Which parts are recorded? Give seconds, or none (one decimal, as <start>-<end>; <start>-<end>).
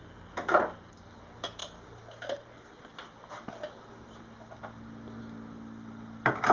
0.0-6.5